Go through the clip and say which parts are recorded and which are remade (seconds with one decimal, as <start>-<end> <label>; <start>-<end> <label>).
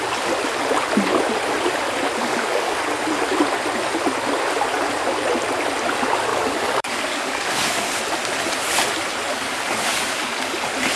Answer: 0.0-2.2 recorded; 2.2-2.8 remade; 2.8-6.3 recorded; 6.3-8.0 remade; 8.0-9.3 recorded; 9.3-10.6 remade; 10.6-11.0 recorded